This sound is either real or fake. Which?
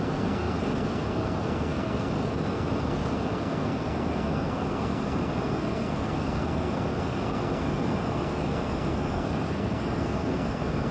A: fake